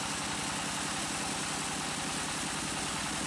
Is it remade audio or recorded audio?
recorded